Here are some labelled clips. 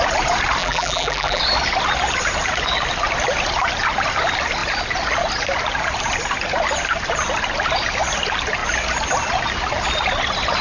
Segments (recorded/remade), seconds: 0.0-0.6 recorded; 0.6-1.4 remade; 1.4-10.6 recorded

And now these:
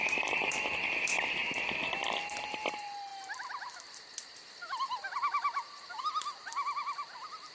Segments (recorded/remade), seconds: 0.0-3.1 remade; 3.1-6.0 recorded; 6.0-7.5 remade